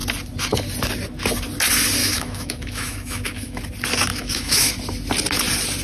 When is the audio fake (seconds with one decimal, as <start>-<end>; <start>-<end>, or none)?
2.0-3.6; 4.1-4.7